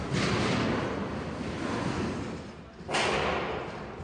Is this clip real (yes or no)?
yes